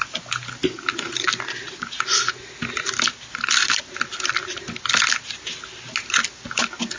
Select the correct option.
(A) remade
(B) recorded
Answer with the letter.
B